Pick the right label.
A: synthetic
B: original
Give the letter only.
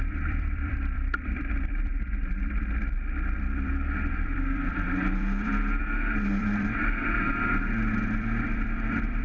A